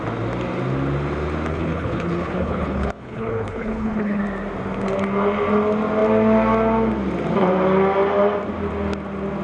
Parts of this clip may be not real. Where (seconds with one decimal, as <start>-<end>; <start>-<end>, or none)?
1.5-4.2